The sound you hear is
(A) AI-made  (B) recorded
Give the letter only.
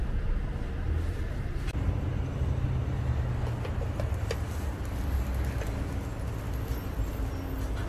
B